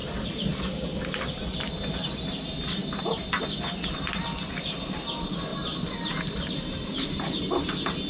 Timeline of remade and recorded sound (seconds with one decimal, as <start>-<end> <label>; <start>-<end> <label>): 0.0-8.1 recorded